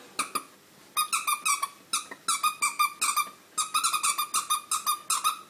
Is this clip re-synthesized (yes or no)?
no